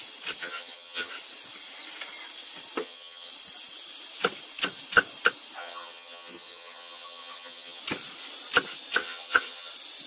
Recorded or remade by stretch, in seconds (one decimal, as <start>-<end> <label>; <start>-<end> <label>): 0.0-0.4 recorded; 0.4-1.1 remade; 1.1-2.8 recorded; 2.8-3.3 remade; 3.3-5.6 recorded; 5.6-7.8 remade; 7.8-9.0 recorded; 9.0-9.7 remade; 9.7-10.1 recorded